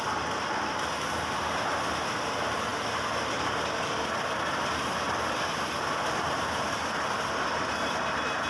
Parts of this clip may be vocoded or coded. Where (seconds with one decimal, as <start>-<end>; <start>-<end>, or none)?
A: none